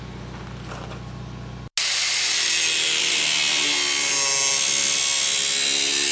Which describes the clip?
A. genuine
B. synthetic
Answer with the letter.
A